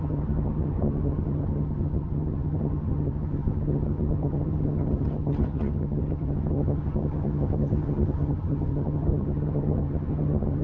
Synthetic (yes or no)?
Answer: yes